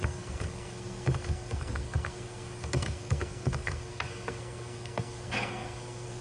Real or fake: fake